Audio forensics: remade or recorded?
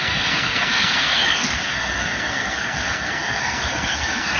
remade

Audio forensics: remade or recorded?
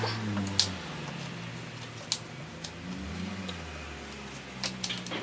recorded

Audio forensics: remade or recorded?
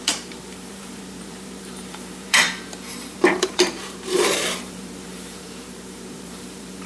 remade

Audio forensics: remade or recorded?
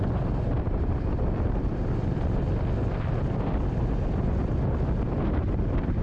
recorded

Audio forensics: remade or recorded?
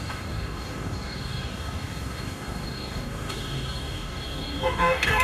remade